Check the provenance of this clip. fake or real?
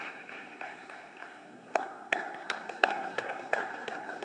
fake